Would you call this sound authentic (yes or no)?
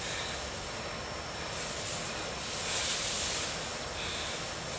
yes